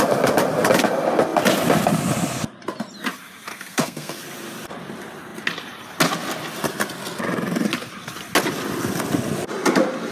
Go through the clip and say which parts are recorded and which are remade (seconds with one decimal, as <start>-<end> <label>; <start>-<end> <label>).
0.0-3.5 recorded; 3.5-4.2 remade; 4.2-10.1 recorded